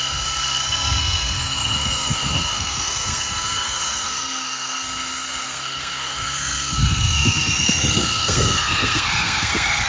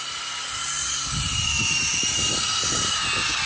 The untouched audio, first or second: second